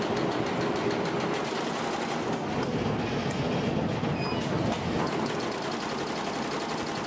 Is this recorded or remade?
recorded